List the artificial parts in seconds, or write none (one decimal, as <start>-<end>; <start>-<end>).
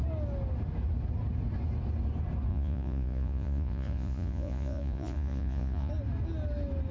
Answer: 2.5-5.9